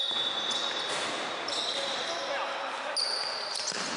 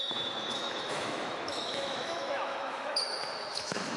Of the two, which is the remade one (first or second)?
second